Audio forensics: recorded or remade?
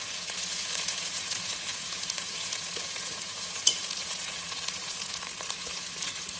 remade